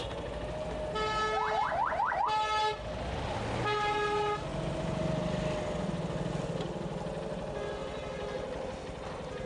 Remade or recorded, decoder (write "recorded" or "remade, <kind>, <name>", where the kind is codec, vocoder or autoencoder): recorded